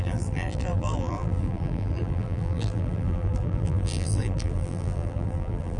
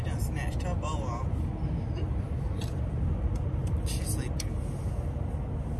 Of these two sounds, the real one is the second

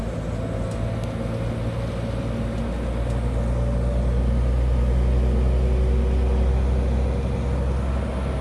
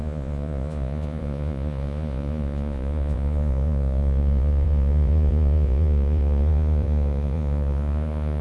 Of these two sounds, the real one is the first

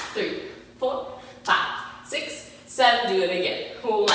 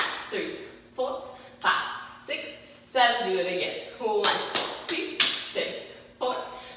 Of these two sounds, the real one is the second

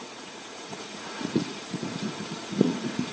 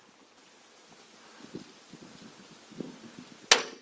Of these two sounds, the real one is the second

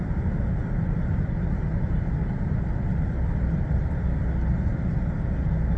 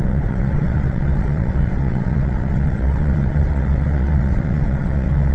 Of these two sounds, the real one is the first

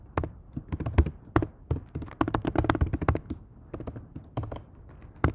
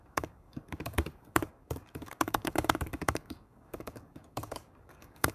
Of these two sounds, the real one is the first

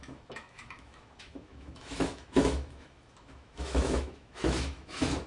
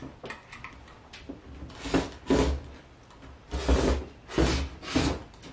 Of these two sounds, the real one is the second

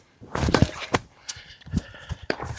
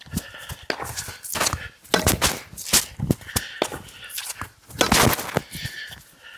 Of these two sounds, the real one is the second